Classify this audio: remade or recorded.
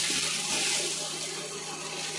recorded